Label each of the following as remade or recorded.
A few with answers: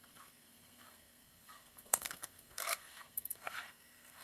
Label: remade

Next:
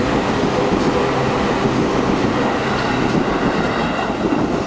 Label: recorded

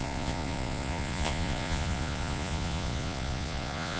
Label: remade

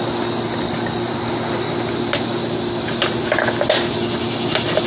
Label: recorded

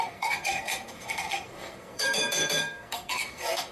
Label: remade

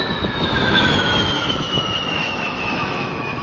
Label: remade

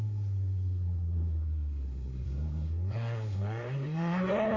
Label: remade